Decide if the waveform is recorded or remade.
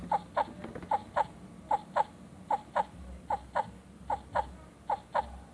recorded